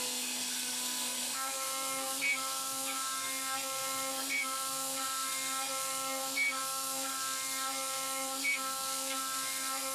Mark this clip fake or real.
fake